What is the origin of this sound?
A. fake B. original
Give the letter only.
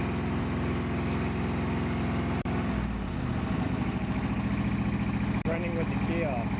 B